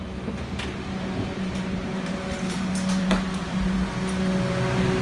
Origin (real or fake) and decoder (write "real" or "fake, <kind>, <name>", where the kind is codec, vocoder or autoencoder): real